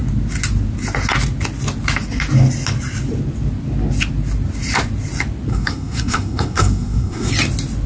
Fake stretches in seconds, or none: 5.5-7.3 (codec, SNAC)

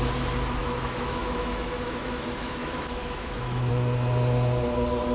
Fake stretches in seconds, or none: 0.6-3.7 (autoencoder, DAC-VAE)